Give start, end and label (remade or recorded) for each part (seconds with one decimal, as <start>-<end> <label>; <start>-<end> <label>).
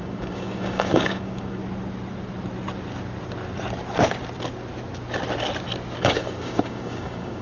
0.0-1.6 remade; 1.6-6.0 recorded; 6.0-7.4 remade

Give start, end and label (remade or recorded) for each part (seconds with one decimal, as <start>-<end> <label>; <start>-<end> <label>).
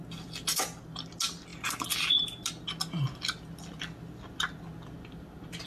0.0-5.7 recorded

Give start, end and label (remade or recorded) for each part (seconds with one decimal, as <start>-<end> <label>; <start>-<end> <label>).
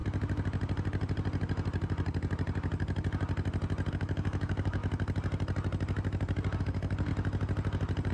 0.0-3.9 recorded; 3.9-4.8 remade; 4.8-6.6 recorded; 6.6-7.1 remade; 7.1-8.1 recorded